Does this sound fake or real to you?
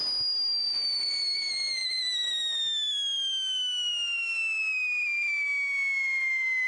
real